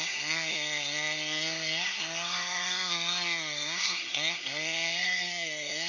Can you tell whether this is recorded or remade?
remade